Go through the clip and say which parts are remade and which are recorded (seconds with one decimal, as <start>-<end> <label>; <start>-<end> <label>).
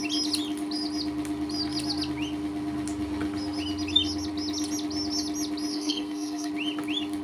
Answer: 0.0-5.7 recorded; 5.7-6.5 remade; 6.5-7.2 recorded